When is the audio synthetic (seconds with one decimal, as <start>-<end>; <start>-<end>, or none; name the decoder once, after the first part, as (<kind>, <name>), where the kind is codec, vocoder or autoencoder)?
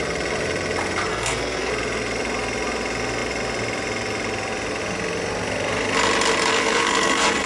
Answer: 1.1-1.7 (codec, SNAC); 6.5-7.5